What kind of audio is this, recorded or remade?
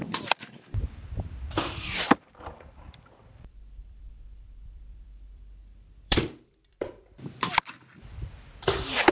remade